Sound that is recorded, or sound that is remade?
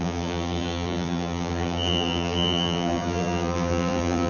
remade